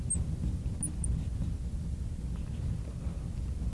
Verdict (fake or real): real